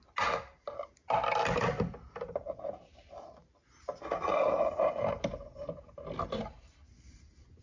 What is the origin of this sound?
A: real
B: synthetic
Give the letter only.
A